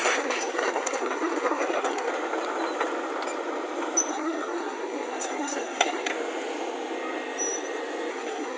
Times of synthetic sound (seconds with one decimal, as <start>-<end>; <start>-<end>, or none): 0.0-2.1; 4.1-6.1; 8.1-8.6